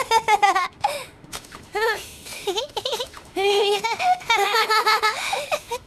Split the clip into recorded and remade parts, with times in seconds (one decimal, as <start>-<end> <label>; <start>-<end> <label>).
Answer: 0.0-5.9 remade